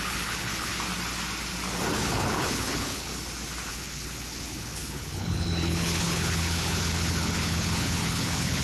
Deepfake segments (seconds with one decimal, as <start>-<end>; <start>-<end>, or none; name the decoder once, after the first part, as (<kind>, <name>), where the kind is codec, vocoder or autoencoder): 0.0-0.7 (codec, HILCodec); 1.9-3.1; 3.7-8.6